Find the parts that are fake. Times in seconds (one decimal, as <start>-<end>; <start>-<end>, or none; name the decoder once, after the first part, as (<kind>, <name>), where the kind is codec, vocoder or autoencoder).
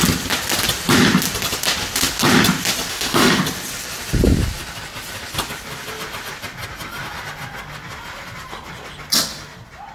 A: 2.9-3.4 (autoencoder, DAC-VAE)